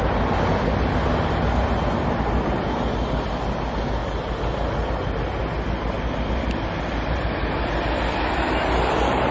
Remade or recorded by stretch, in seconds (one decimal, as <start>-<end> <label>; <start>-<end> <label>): 0.0-9.3 recorded